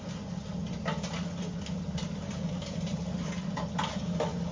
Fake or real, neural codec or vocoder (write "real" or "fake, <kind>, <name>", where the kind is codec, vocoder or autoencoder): real